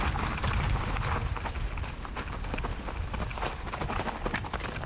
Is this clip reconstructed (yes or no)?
no